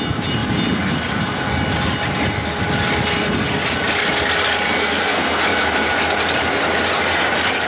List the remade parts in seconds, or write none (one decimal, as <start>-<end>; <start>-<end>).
4.8-5.4